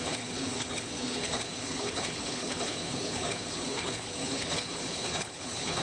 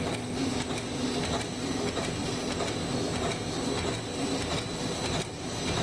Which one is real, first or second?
second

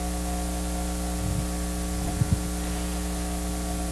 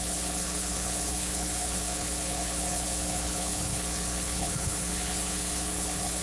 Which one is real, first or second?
first